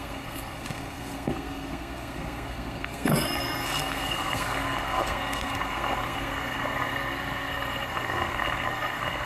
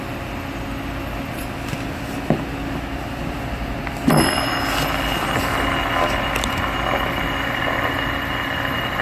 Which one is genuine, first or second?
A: second